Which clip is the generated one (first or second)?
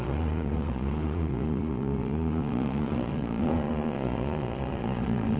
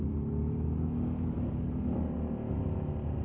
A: first